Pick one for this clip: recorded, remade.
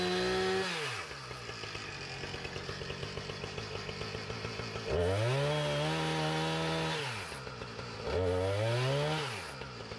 recorded